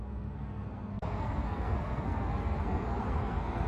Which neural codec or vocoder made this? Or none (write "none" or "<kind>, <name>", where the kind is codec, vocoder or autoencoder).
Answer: codec, SNAC